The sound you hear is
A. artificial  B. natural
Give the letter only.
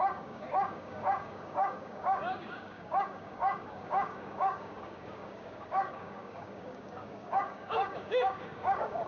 A